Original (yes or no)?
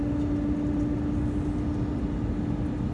yes